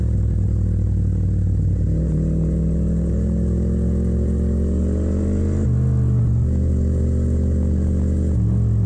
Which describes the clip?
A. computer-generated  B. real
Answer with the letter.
B